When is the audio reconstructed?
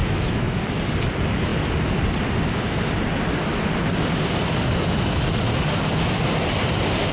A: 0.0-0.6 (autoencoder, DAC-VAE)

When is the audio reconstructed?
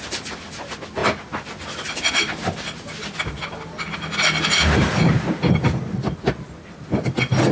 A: none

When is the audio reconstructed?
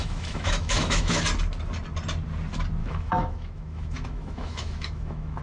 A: 0.0-1.2 (autoencoder, DAC-VAE); 2.8-5.4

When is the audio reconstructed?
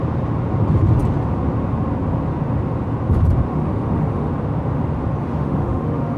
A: 3.5-4.3 (autoencoder, DAC-VAE); 5.2-6.2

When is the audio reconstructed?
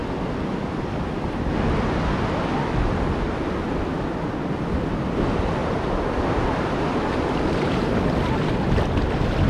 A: none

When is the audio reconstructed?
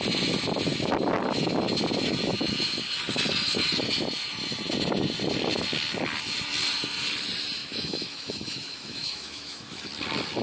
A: 7.6-9.9 (autoencoder, DAC-VAE)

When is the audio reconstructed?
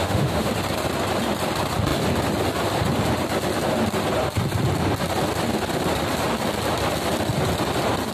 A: 0.0-0.5 (autoencoder, DAC-VAE)